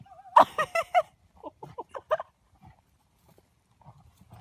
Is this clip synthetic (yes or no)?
no